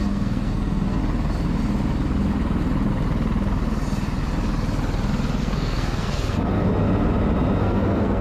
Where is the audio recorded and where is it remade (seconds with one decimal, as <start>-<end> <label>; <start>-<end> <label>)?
0.0-1.0 remade; 1.0-5.4 recorded; 5.4-6.7 remade; 6.7-7.6 recorded; 7.6-8.2 remade